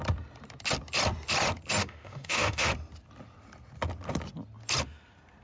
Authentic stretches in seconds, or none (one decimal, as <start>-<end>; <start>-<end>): 0.0-1.8; 2.7-5.4

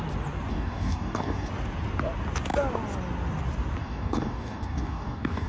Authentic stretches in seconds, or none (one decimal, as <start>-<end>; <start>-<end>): 0.0-0.5; 1.5-3.8

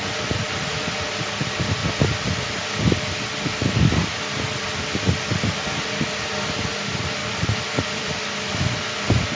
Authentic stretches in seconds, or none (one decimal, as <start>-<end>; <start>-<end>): 0.0-7.2; 8.1-9.3

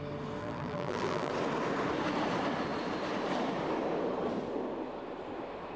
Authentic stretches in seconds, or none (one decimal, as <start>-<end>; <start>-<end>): 0.0-0.4; 1.3-5.8

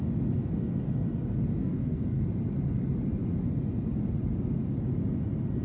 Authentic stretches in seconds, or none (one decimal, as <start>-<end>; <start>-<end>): 0.0-1.6; 2.2-5.6

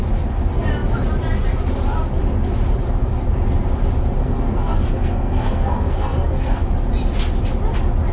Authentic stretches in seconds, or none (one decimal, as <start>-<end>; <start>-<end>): 0.0-4.2; 6.7-8.1